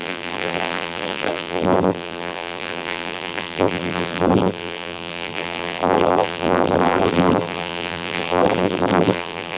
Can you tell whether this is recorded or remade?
remade